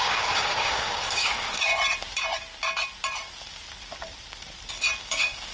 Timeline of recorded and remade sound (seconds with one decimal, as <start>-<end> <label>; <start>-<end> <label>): 0.0-1.7 remade; 1.7-5.0 recorded; 5.0-5.5 remade